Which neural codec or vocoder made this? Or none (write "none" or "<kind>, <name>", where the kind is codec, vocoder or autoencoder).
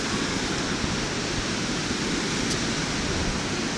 none